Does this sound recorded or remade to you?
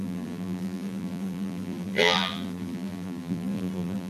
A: remade